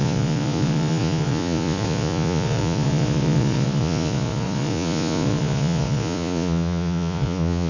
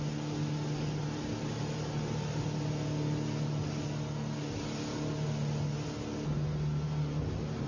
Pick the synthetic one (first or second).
first